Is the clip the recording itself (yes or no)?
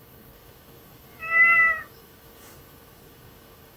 no